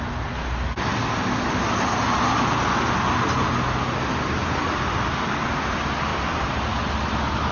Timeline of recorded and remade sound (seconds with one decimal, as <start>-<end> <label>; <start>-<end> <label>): 0.0-6.1 recorded; 6.1-7.1 remade; 7.1-7.5 recorded